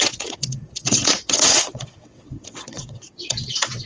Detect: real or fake fake